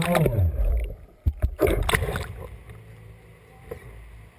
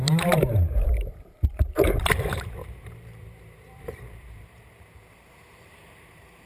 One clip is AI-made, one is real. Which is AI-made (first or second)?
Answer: second